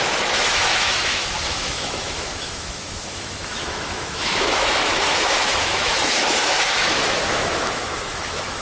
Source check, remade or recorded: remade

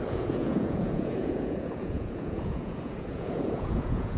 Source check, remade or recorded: remade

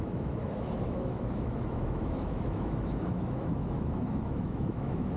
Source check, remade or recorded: remade